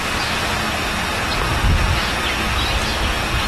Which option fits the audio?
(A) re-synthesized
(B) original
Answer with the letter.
B